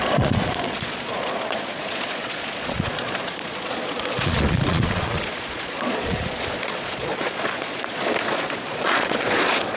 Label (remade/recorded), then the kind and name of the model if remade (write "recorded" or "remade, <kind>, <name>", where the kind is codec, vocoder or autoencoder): remade, vocoder, Vocos